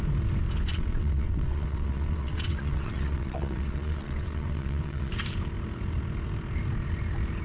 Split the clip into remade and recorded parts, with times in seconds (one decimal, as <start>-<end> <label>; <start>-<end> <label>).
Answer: 0.0-0.7 recorded; 0.7-5.1 remade; 5.1-7.4 recorded